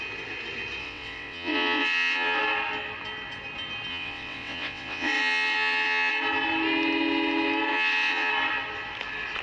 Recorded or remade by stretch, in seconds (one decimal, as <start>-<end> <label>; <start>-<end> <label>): 0.0-0.8 recorded; 0.8-2.4 remade; 2.4-3.9 recorded; 3.9-6.1 remade; 6.1-7.7 recorded; 7.7-8.3 remade; 8.3-9.4 recorded